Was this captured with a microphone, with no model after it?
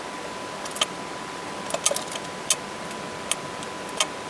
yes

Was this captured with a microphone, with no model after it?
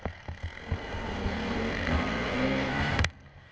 no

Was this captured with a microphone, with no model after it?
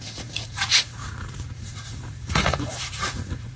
no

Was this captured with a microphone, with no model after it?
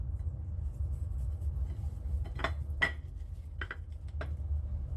yes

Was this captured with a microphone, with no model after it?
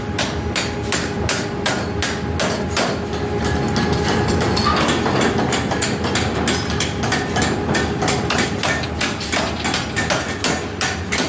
yes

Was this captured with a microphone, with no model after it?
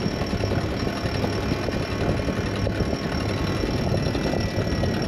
yes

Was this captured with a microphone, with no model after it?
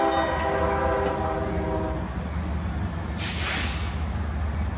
yes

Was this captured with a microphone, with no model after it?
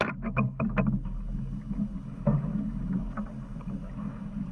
yes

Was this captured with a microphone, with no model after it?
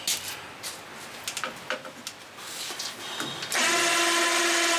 yes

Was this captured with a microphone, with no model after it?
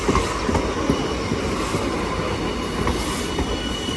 yes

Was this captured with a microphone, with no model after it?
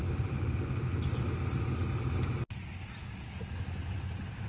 yes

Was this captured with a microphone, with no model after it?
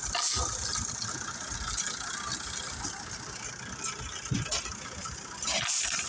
yes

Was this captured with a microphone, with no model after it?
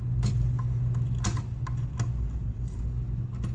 yes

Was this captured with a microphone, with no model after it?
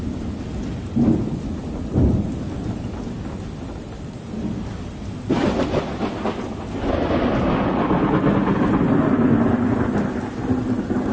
yes